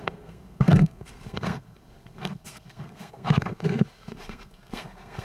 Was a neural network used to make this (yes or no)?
yes